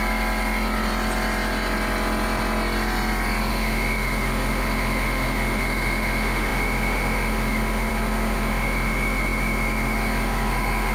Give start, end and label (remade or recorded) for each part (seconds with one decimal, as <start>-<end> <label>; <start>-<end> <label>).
0.0-3.5 recorded; 3.5-10.9 remade

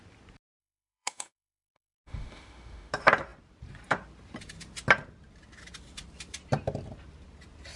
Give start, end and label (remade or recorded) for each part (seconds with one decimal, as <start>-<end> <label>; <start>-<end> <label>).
0.0-0.6 recorded; 0.6-2.9 remade; 2.9-7.8 recorded

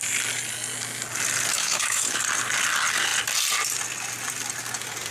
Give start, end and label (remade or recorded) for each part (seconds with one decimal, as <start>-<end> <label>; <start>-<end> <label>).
0.0-1.5 recorded; 1.5-2.2 remade; 2.2-5.1 recorded

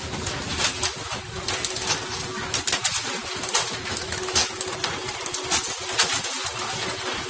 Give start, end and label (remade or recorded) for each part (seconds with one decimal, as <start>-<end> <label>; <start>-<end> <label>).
0.0-3.6 recorded; 3.6-4.5 remade; 4.5-7.3 recorded

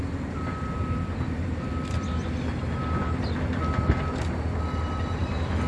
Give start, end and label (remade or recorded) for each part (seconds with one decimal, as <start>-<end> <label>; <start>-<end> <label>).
0.0-5.7 recorded

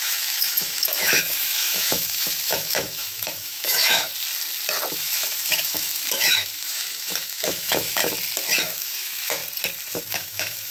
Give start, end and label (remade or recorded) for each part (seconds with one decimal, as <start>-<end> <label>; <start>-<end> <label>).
0.0-4.1 remade; 4.1-4.9 recorded; 4.9-8.0 remade; 8.0-8.6 recorded; 8.6-9.4 remade; 9.4-10.0 recorded; 10.0-10.7 remade

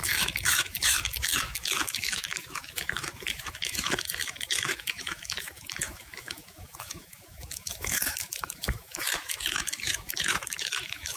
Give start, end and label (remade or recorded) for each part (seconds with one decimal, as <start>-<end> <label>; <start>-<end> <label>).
0.0-11.2 remade